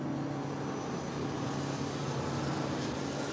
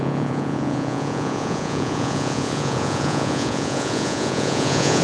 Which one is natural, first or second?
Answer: first